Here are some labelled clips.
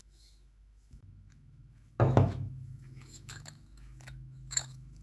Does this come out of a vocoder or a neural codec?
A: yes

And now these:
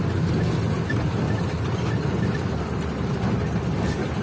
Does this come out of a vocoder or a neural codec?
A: yes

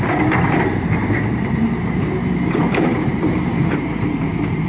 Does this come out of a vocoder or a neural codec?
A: yes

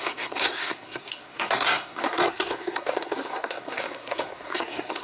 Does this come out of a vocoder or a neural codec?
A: yes